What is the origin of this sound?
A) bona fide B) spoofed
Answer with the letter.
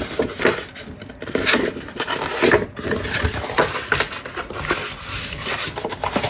A